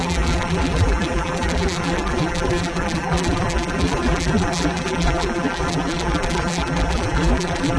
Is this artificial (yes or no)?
yes